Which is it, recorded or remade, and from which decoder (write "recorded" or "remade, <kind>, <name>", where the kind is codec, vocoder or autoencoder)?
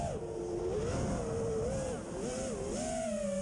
recorded